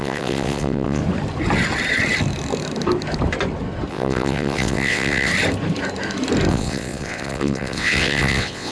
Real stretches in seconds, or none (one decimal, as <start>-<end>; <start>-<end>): 1.0-3.9; 5.3-6.5